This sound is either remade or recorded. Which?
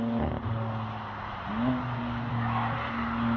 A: recorded